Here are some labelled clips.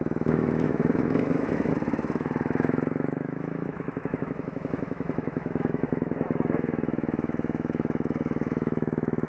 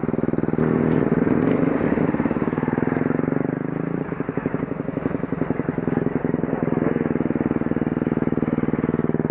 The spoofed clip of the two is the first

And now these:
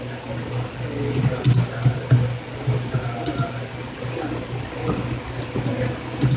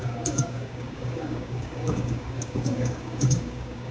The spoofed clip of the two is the second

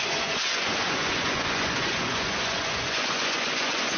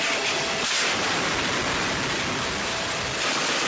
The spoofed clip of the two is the first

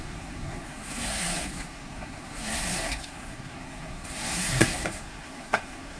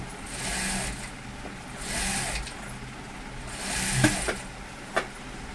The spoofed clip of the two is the first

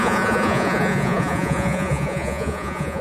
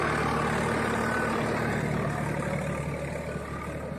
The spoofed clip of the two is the first